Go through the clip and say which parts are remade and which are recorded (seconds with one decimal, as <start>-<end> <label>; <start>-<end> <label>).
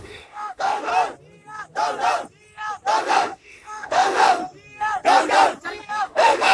0.0-0.9 remade; 0.9-3.0 recorded; 3.0-4.4 remade; 4.4-6.0 recorded; 6.0-6.5 remade